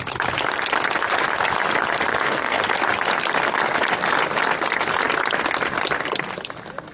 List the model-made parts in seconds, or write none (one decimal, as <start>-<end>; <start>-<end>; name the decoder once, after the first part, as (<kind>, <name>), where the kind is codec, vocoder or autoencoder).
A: 2.1-2.6 (codec, SNAC)